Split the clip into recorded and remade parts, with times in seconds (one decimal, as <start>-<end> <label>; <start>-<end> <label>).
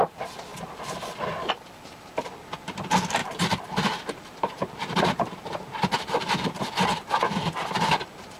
0.0-3.2 recorded; 3.2-6.6 remade; 6.6-8.4 recorded